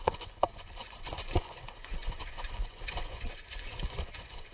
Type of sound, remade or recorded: remade